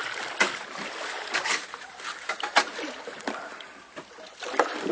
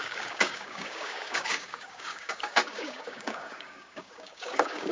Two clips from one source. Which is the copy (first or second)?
second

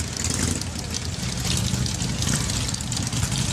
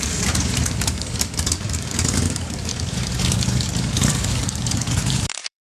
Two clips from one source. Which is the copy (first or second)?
second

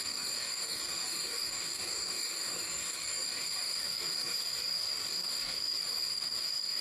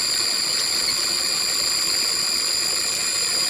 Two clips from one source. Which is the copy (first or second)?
first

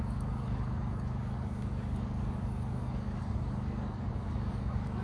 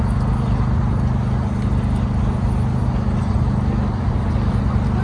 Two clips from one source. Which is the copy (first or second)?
first